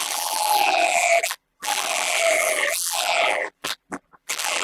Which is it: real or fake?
fake